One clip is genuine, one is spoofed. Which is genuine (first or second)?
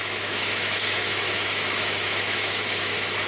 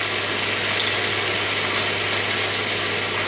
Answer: second